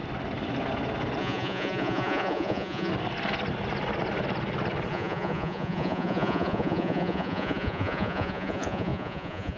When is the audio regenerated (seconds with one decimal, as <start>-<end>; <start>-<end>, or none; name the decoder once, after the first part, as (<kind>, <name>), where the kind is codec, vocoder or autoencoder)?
1.2-2.9 (vocoder, Vocos); 4.9-9.6